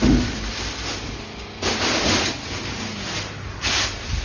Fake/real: real